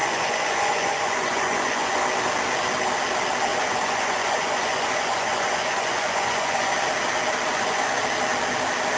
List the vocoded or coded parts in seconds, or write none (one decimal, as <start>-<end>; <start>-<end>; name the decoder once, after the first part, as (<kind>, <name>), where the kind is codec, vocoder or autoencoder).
0.0-2.0 (vocoder, Vocos); 3.5-6.7; 7.5-8.0